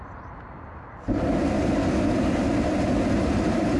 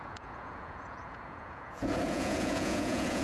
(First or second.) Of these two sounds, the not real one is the second